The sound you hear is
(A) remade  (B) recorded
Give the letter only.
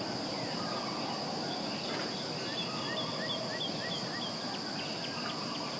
B